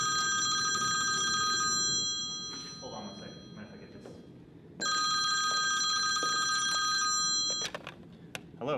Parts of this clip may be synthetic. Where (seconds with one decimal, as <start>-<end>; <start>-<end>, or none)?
none